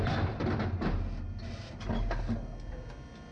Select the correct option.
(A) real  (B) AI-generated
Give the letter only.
A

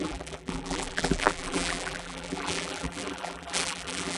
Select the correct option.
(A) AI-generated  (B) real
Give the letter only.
A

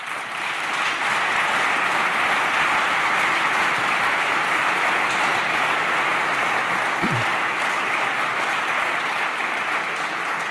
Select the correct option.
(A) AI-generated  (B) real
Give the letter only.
B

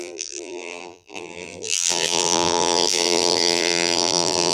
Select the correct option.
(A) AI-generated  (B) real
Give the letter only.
A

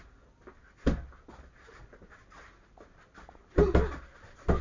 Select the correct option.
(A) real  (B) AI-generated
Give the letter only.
A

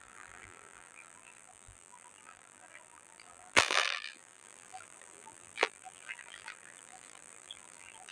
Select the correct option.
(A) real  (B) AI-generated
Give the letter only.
B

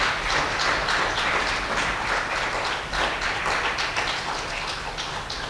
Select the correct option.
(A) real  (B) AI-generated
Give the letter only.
A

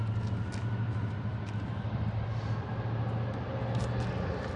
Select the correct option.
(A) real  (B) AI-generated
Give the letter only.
A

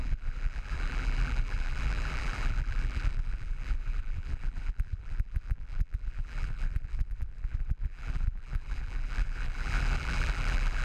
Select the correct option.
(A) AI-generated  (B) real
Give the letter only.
A